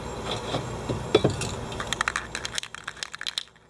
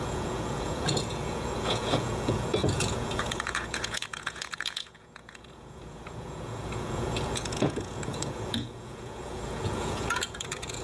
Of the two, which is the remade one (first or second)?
second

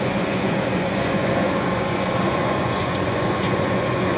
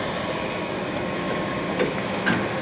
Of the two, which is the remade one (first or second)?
first